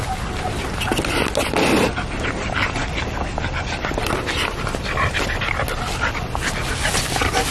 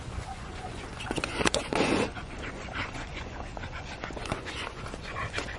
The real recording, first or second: first